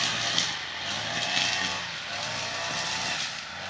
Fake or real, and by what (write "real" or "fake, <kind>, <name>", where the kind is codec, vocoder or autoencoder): real